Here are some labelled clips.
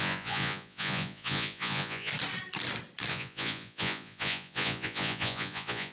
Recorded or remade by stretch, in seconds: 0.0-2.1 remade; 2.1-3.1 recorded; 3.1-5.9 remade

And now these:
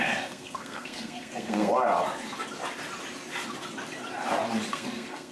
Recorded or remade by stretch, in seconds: 0.0-1.7 remade; 1.7-4.7 recorded; 4.7-5.3 remade

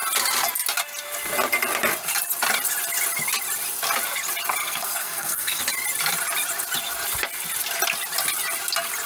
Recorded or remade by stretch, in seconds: 0.0-4.6 recorded; 4.6-5.6 remade; 5.6-9.1 recorded

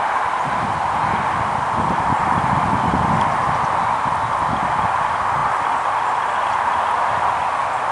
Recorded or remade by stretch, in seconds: 0.0-7.9 recorded

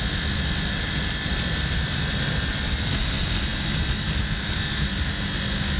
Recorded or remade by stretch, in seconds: 0.0-5.8 recorded

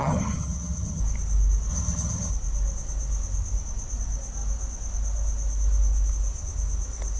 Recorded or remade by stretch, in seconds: 0.0-1.0 remade; 1.0-1.7 recorded; 1.7-2.3 remade; 2.3-7.2 recorded

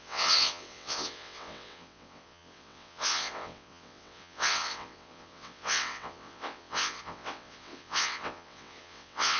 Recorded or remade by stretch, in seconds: 0.0-9.4 remade

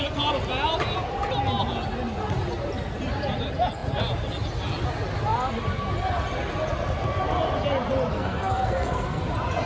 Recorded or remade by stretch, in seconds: 0.0-8.1 recorded; 8.1-9.2 remade; 9.2-9.7 recorded